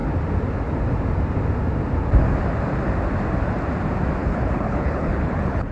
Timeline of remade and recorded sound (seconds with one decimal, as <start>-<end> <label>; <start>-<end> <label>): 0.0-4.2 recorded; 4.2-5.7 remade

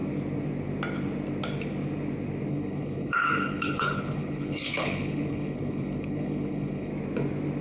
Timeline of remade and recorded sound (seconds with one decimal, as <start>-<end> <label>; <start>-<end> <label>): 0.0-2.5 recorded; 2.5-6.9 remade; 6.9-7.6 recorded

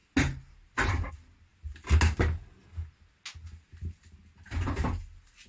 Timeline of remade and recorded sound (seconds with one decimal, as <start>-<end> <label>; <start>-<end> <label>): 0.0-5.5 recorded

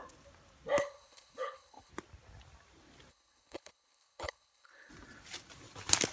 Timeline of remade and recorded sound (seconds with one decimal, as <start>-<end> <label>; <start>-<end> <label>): 0.0-0.8 recorded; 0.8-1.9 remade; 1.9-3.1 recorded; 3.1-4.9 remade; 4.9-6.1 recorded

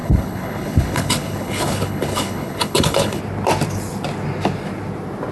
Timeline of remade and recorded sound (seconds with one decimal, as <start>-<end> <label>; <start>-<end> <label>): 0.0-3.2 remade; 3.2-5.3 recorded

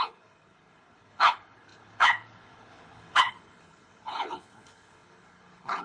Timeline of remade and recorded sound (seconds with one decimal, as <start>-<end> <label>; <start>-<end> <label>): 0.0-5.8 remade